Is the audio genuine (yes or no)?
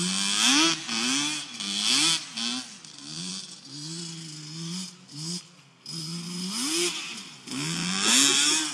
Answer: yes